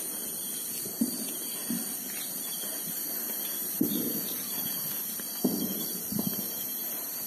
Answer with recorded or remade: recorded